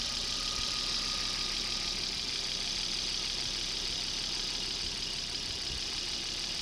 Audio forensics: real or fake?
real